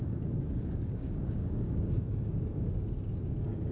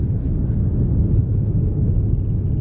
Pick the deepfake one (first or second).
first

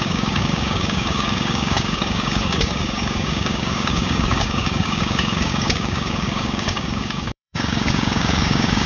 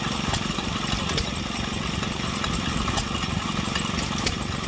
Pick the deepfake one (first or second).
first